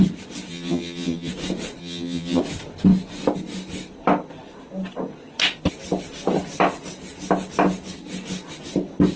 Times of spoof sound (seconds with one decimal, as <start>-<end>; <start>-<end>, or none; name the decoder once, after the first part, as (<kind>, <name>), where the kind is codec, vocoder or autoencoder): 0.5-1.3 (vocoder, HiFi-GAN); 1.8-2.4